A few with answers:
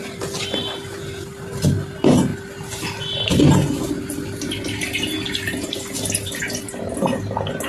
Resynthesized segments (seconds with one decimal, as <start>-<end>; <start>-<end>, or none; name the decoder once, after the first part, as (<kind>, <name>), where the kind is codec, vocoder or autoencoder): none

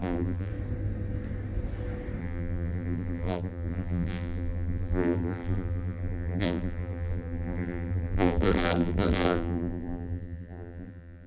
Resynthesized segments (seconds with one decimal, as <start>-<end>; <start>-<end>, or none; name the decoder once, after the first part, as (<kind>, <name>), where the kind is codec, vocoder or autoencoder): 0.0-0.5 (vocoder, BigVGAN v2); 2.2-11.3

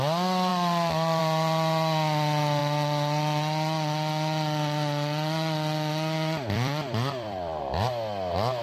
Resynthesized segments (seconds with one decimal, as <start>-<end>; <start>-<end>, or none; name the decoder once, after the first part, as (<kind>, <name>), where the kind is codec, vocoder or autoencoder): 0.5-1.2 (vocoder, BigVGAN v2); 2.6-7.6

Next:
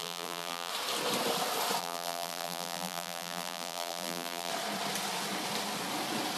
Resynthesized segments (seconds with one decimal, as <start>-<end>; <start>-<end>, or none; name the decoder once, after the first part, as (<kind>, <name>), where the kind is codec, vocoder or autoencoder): 0.0-0.7 (vocoder, BigVGAN v2); 1.8-4.5

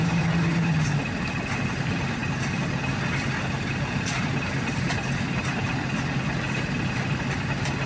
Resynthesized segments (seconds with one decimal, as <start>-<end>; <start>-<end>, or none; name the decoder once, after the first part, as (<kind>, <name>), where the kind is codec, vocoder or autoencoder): none

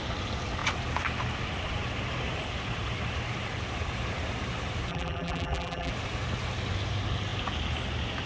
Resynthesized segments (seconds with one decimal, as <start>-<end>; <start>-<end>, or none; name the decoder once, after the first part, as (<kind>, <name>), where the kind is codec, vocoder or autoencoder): 4.9-5.9 (vocoder, BigVGAN v2)

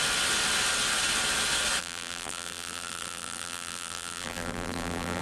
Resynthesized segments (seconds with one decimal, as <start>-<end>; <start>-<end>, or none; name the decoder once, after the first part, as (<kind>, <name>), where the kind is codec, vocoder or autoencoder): 1.8-5.2 (vocoder, BigVGAN v2)